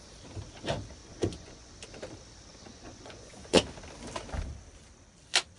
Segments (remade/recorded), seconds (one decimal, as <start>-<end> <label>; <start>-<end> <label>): 0.0-1.0 recorded; 1.0-1.7 remade; 1.7-2.5 recorded; 2.5-3.6 remade; 3.6-5.6 recorded